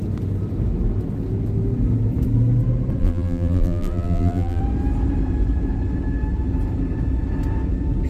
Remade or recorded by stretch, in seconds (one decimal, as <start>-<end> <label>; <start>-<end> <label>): 0.0-3.0 recorded; 3.0-4.6 remade; 4.6-8.1 recorded